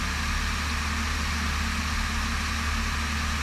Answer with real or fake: real